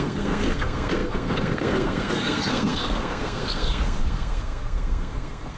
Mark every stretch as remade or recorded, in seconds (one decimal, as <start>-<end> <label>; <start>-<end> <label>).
0.0-5.6 remade